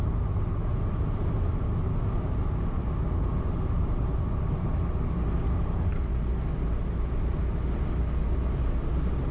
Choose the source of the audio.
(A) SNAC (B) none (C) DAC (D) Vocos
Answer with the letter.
B